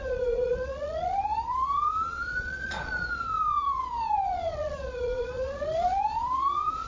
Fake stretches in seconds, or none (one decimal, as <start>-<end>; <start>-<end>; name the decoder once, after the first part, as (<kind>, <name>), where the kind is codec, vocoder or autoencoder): 0.0-6.9 (vocoder, Vocos)